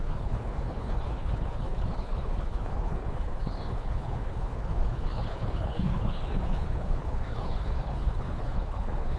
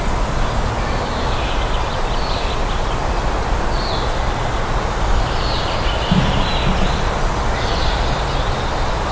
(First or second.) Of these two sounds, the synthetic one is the first